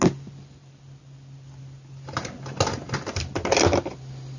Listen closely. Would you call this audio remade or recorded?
recorded